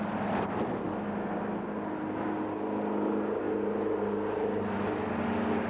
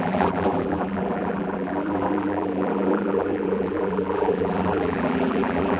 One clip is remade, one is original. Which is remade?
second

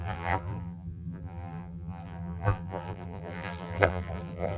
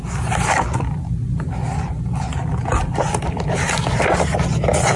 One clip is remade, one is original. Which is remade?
first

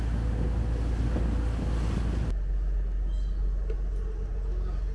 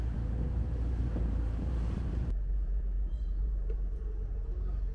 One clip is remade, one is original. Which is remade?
second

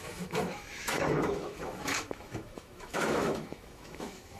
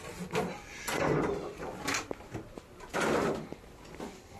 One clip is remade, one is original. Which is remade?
first